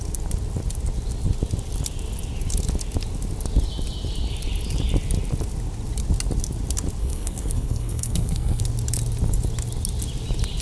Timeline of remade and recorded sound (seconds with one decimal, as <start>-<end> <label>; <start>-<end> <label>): 0.0-7.0 recorded; 7.0-8.6 remade; 8.6-10.6 recorded